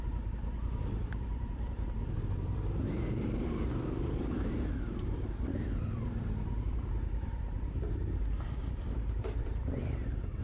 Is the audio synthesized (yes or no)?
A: yes